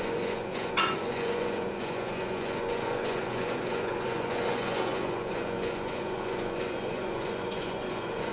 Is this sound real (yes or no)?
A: no